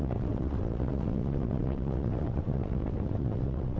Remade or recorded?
remade